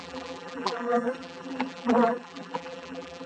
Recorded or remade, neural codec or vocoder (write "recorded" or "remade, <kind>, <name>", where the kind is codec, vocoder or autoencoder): remade, vocoder, BigVGAN v2